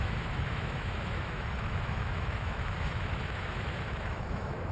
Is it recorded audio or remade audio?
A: remade